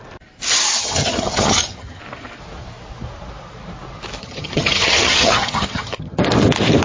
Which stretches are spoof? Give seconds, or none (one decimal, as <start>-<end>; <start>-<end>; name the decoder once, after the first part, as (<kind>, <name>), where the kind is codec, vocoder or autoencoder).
0.8-2.0 (vocoder, HiFi-GAN); 4.2-6.2